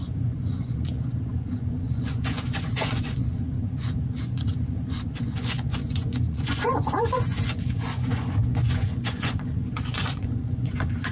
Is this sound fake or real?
fake